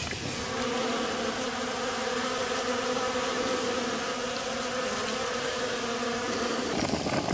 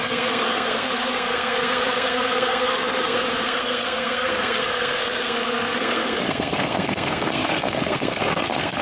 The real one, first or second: first